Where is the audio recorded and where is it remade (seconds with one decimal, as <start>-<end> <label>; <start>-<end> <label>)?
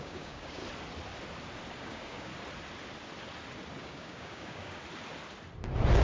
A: 0.0-0.6 remade; 0.6-1.7 recorded; 1.7-2.3 remade; 2.3-3.8 recorded; 3.8-4.8 remade; 4.8-6.0 recorded